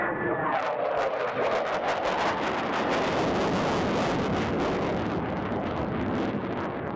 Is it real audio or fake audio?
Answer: real